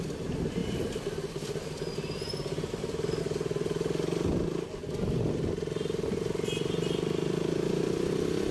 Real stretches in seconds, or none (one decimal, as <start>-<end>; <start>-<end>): 0.0-8.5